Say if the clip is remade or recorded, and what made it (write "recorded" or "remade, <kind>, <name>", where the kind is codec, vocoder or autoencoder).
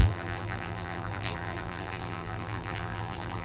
remade, vocoder, BigVGAN v2